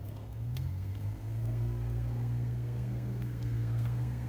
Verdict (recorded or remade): remade